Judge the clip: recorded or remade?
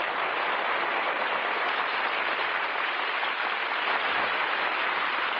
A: recorded